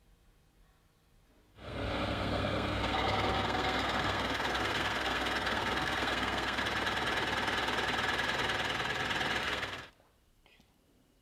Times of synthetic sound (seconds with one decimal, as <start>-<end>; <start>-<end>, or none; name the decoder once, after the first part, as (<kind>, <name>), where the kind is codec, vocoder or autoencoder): 1.5-6.6 (codec, SNAC); 9.4-9.9